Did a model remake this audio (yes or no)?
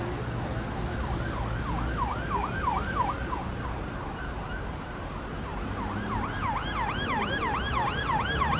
no